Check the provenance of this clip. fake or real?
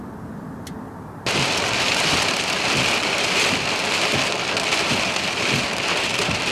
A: real